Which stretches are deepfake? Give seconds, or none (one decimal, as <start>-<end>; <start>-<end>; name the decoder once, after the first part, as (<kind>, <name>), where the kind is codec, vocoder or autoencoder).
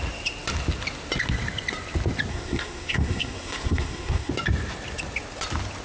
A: 2.3-4.3 (codec, SNAC)